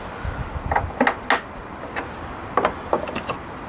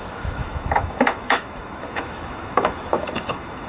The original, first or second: first